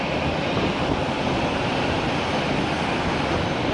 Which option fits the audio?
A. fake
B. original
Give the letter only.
B